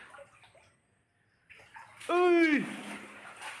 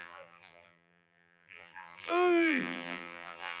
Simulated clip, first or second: second